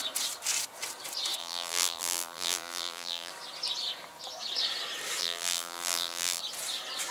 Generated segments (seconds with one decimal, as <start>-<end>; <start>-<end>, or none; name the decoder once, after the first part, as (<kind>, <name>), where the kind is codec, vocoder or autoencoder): 1.4-3.3 (vocoder, BigVGAN v2); 5.2-6.4